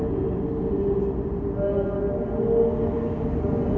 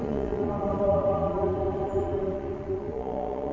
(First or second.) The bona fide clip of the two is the first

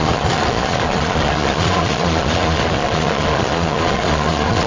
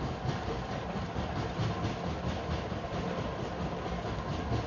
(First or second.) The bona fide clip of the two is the second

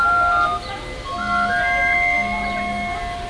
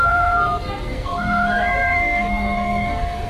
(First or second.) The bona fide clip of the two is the first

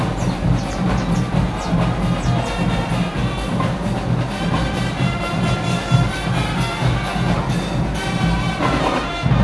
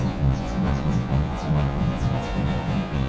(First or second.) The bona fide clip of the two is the first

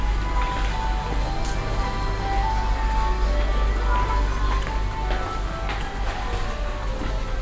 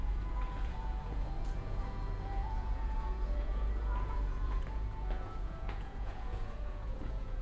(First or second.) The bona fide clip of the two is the first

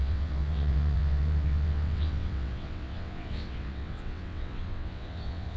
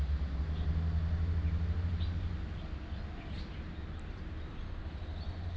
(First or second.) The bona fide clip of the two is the second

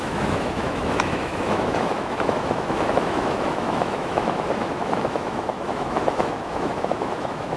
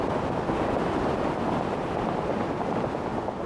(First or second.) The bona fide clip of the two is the second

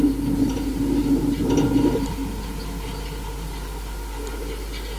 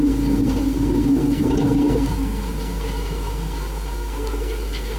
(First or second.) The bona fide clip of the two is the first